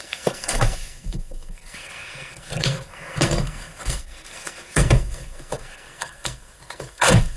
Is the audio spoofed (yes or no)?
yes